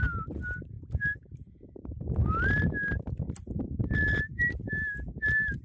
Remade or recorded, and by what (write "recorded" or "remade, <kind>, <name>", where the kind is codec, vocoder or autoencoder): recorded